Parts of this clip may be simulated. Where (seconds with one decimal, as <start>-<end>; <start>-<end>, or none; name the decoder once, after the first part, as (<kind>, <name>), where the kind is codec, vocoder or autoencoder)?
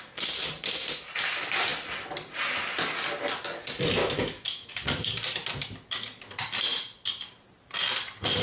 4.0-4.7 (autoencoder, DAC-VAE)